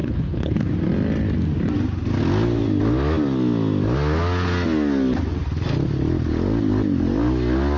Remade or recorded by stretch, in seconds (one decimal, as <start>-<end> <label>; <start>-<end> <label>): 0.0-0.7 remade; 0.7-7.8 recorded